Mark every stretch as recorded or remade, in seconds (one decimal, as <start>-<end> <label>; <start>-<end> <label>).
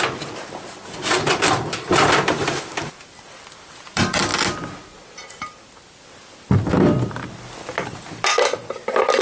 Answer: 0.0-4.3 remade; 4.3-6.3 recorded; 6.3-9.2 remade